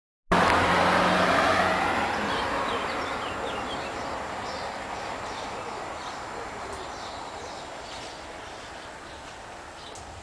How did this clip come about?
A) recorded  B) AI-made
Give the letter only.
A